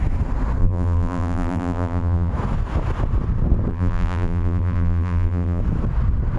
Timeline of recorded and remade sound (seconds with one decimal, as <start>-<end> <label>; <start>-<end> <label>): 0.0-0.6 recorded; 0.6-2.3 remade; 2.3-3.7 recorded; 3.7-5.6 remade; 5.6-6.4 recorded